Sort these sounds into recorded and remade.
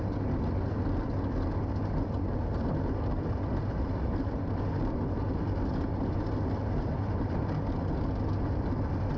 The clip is recorded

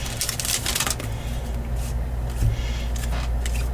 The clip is recorded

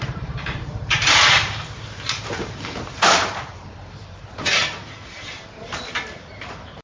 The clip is remade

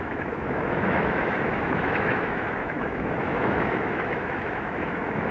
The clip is remade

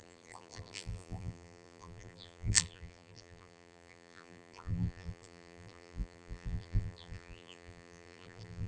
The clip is remade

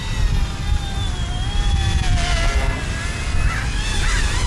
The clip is recorded